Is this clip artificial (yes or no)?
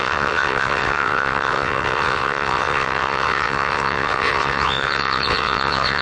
yes